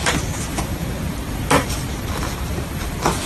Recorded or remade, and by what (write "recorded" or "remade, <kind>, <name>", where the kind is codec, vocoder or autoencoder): remade, vocoder, BigVGAN v2